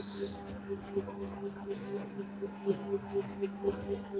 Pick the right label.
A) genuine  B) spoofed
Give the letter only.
B